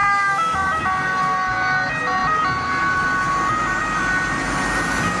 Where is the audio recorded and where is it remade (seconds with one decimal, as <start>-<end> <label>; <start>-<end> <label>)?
0.0-0.8 remade; 0.8-5.2 recorded